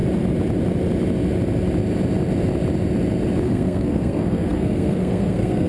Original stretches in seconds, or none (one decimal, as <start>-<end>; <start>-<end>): 0.0-3.4